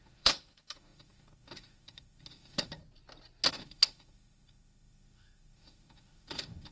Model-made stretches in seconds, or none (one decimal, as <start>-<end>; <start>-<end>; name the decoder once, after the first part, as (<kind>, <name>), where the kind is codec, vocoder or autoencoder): 0.0-2.8 (autoencoder, DAC-VAE); 3.5-6.7